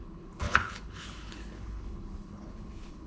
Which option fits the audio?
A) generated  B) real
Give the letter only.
A